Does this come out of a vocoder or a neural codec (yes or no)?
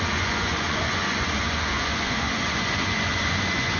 yes